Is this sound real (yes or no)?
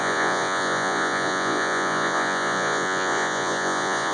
no